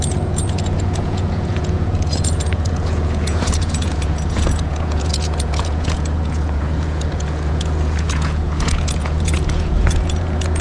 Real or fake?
fake